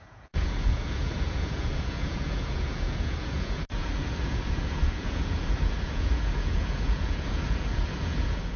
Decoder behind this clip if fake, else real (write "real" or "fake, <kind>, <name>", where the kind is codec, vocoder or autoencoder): fake, vocoder, Vocos